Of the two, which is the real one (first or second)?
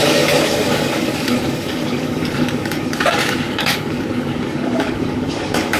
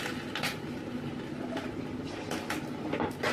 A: second